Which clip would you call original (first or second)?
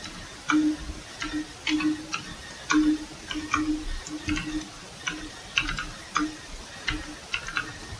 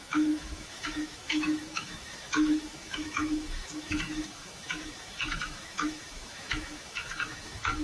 first